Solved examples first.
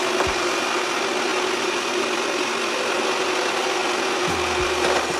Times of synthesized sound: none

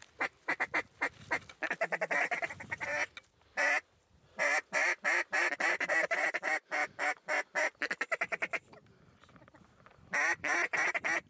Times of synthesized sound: none

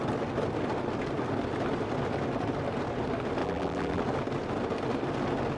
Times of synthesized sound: 3.4-4.0